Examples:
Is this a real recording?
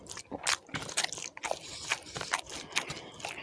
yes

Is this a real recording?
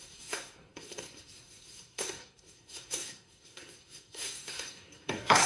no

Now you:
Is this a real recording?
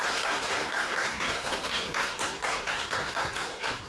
no